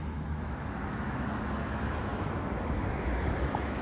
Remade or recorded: remade